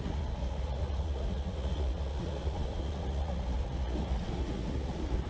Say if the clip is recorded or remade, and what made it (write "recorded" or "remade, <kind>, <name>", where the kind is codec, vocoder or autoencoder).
remade, vocoder, Vocos